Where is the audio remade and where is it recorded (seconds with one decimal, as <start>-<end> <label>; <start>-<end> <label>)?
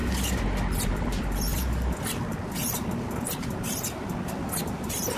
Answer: 0.0-1.0 recorded; 1.0-1.5 remade; 1.5-4.6 recorded; 4.6-5.2 remade